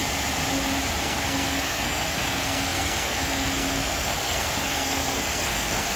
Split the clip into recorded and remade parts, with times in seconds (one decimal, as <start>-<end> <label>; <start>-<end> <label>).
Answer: 0.0-1.0 recorded; 1.0-6.0 remade